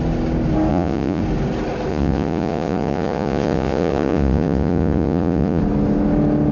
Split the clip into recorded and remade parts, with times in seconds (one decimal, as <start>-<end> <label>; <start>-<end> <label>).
0.0-0.7 recorded; 0.7-1.2 remade; 1.2-1.9 recorded; 1.9-5.6 remade; 5.6-6.5 recorded